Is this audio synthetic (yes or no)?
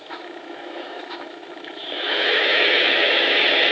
yes